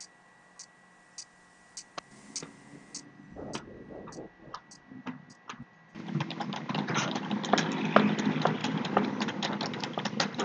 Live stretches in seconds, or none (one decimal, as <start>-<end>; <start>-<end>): 0.0-8.6; 9.5-10.4